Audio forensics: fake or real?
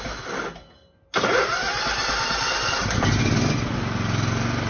real